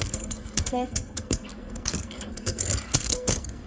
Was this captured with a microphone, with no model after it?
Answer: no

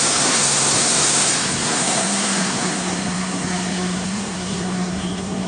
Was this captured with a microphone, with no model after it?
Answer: no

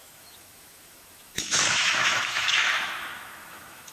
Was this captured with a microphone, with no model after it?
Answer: no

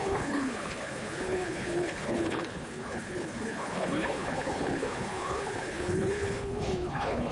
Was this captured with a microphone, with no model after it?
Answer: no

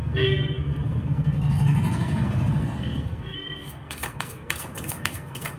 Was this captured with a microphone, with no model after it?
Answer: no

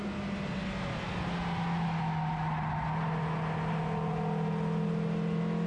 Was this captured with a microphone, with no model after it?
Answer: yes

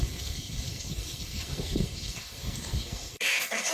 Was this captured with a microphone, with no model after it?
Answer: no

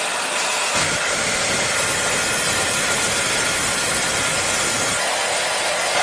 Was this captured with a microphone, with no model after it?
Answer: yes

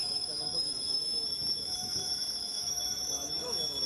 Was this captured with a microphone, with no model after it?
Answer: no